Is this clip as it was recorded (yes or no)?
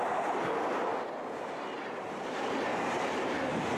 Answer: yes